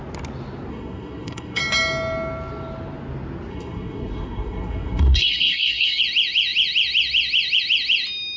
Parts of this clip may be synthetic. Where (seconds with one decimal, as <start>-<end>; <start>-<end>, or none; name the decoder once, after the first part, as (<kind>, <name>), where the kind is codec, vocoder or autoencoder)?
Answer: 0.7-1.6 (codec, SNAC); 3.5-6.0